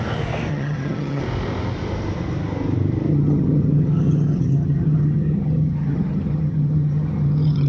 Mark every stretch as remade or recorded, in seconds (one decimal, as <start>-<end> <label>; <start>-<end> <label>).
0.0-0.5 recorded; 0.5-1.2 remade; 1.2-3.1 recorded; 3.1-7.7 remade